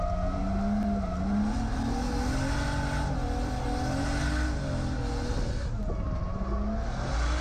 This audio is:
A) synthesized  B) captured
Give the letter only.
B